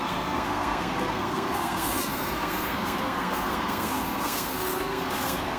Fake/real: fake